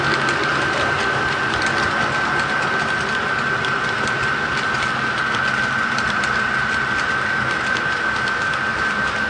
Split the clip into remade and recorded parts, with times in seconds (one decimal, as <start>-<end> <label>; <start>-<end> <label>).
0.0-0.5 recorded; 0.5-1.6 remade; 1.6-9.3 recorded